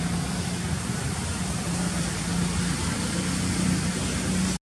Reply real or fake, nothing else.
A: real